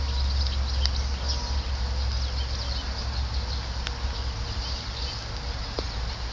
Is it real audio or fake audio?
real